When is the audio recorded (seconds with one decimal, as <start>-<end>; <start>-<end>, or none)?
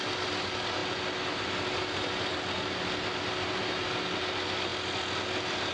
0.0-4.7; 5.2-5.7